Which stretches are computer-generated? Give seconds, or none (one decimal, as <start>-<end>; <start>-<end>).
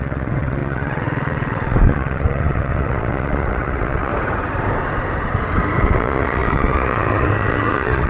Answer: 0.0-4.1; 5.8-8.1